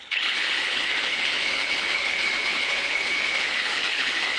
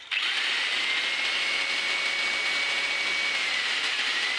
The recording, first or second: second